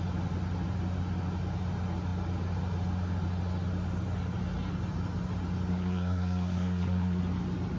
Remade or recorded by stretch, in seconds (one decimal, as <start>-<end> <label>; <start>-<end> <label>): 0.0-5.7 recorded; 5.7-7.2 remade; 7.2-7.8 recorded